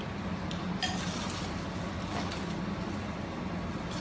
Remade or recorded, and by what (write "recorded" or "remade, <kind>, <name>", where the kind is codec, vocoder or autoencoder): recorded